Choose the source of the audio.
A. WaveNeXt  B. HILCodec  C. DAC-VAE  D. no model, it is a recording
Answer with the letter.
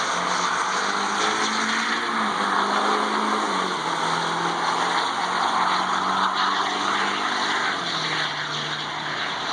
D